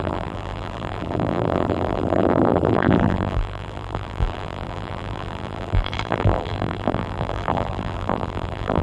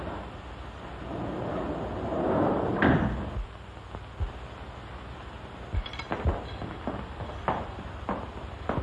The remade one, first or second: first